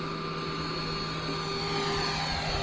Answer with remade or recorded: recorded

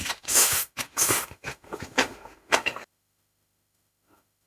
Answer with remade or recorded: remade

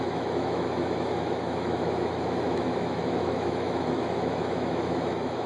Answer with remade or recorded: remade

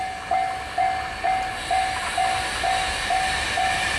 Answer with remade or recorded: recorded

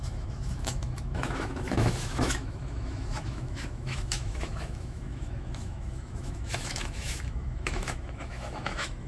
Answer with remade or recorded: remade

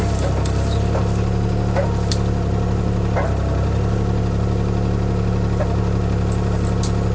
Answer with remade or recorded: recorded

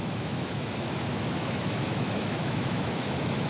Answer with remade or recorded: remade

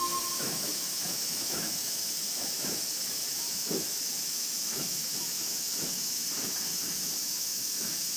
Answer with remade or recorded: remade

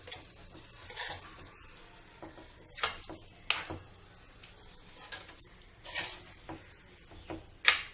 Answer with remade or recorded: recorded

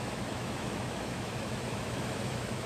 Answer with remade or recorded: remade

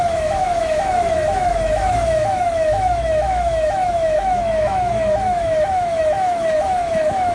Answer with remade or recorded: remade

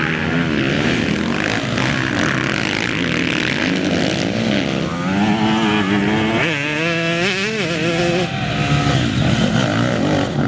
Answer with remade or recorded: recorded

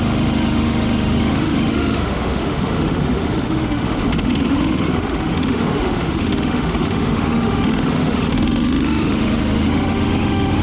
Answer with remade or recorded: remade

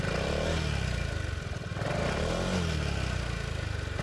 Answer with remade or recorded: recorded